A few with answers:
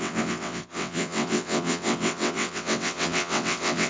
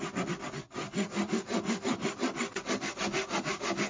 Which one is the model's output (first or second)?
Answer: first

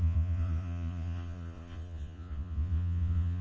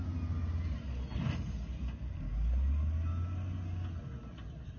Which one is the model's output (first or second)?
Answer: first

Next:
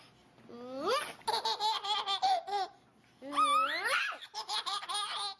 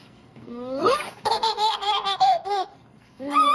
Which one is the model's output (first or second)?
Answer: second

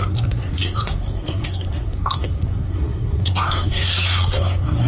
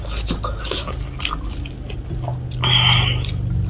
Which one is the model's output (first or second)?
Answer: first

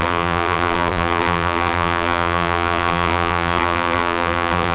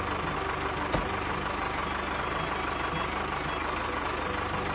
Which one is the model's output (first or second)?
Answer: first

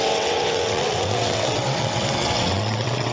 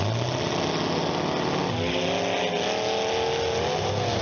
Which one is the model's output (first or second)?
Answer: first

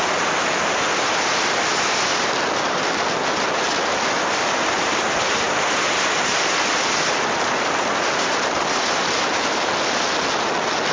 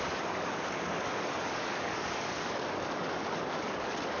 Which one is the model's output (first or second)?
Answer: second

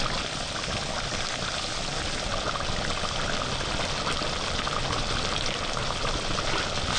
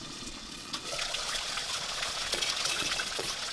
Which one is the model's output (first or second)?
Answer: second